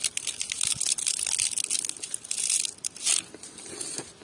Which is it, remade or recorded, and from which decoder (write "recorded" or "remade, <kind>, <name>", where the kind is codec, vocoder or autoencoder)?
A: recorded